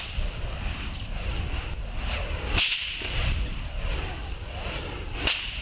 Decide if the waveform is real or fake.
real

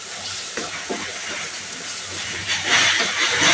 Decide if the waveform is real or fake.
fake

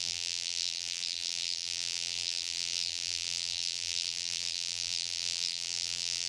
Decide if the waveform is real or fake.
fake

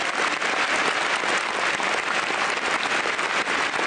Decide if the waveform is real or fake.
real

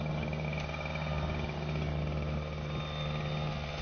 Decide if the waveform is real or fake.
real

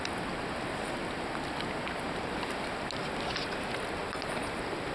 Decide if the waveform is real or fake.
real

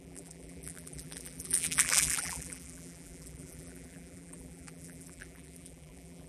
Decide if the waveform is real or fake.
fake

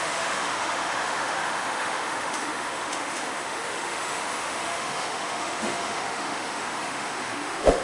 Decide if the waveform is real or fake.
fake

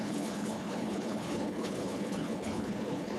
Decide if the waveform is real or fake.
fake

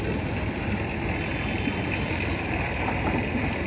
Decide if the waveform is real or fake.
real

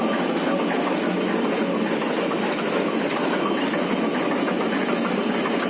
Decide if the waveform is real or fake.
real